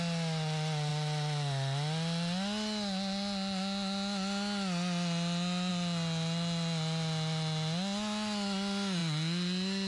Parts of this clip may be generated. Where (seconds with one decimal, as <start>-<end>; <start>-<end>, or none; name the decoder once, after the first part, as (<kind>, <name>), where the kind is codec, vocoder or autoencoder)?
none